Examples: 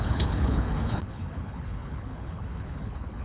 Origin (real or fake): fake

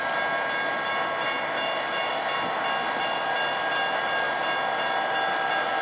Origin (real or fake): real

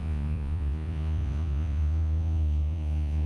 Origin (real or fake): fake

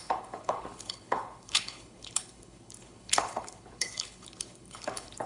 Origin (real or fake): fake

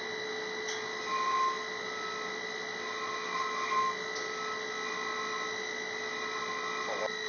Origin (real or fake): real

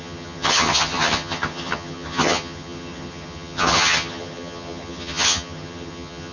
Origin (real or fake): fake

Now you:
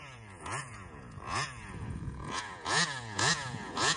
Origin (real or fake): fake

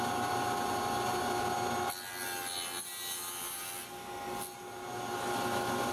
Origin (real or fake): real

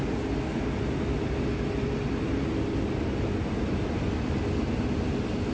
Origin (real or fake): real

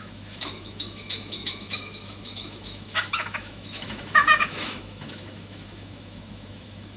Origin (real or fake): fake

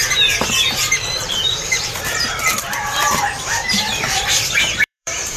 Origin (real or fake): fake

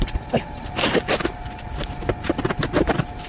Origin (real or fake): real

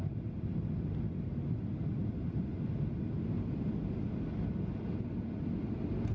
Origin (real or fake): real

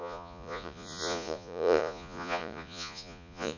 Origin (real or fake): fake